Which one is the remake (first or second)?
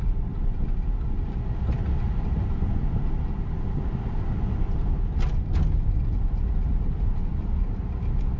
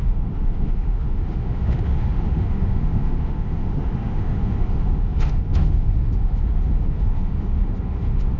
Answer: second